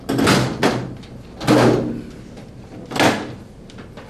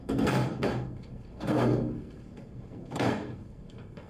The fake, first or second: second